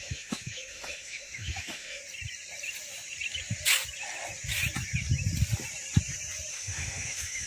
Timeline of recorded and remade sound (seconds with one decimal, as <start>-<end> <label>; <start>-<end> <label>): 0.0-2.0 remade; 2.0-6.5 recorded; 6.5-7.5 remade